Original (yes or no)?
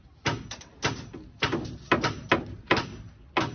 yes